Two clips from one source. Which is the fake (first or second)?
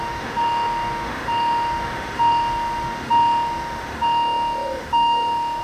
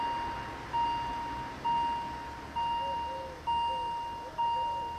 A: first